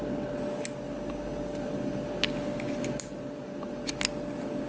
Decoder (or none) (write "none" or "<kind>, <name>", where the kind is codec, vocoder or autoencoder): none